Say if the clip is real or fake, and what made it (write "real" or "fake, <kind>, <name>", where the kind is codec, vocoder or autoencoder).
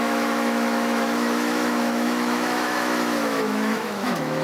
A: fake, autoencoder, DAC-VAE